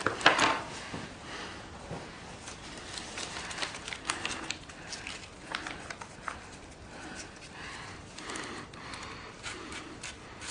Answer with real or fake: fake